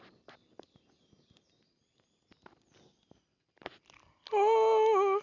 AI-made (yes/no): no